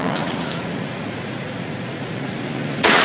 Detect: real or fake fake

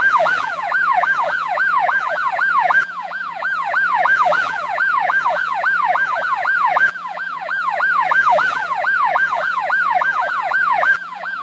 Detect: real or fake fake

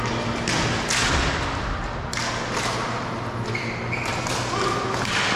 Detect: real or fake real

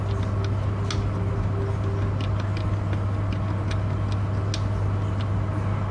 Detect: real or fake real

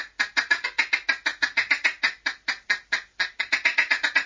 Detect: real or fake real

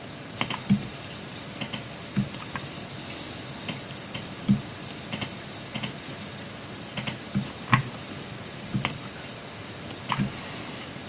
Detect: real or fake real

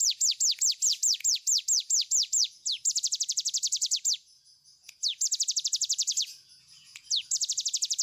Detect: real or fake fake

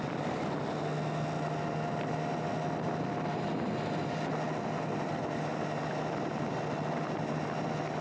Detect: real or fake real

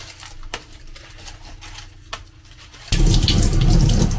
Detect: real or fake real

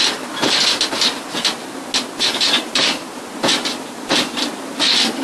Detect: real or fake real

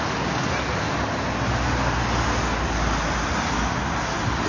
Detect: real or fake real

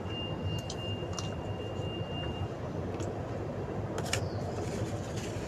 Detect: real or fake real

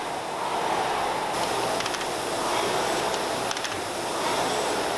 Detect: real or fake real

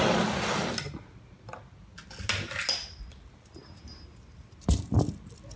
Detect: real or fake real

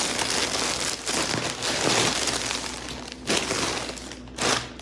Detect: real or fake real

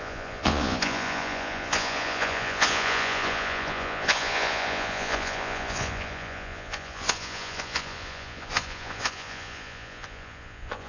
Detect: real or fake fake